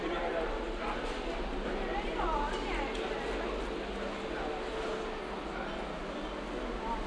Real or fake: real